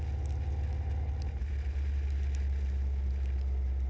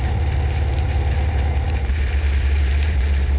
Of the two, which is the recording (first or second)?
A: first